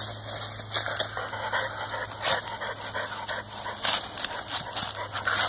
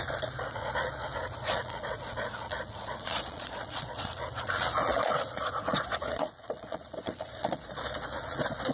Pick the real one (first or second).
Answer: first